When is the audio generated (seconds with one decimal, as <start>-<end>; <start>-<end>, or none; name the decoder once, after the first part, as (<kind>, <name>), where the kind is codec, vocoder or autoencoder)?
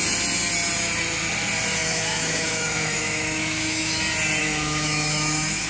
1.8-4.0 (autoencoder, DAC-VAE); 4.4-5.7